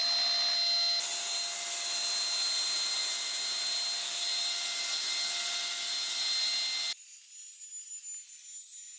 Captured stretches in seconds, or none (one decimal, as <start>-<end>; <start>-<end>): 0.0-9.0